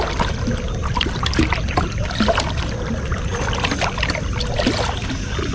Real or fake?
real